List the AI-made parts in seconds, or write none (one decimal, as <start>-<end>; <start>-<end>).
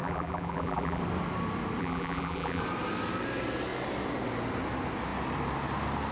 0.0-1.0; 1.8-2.6